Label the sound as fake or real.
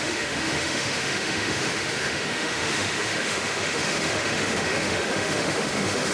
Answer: fake